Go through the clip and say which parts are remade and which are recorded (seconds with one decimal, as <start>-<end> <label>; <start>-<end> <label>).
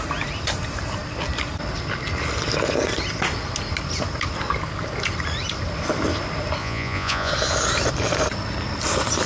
0.0-6.6 recorded; 6.6-7.3 remade; 7.3-9.3 recorded